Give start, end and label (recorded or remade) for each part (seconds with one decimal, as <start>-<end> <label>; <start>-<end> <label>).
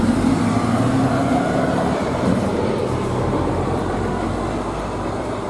0.0-2.0 recorded; 2.0-2.5 remade; 2.5-5.5 recorded